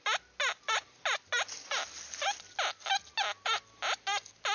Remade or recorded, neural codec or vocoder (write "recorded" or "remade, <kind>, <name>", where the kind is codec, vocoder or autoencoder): recorded